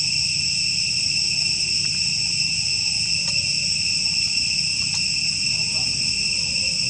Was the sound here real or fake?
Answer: real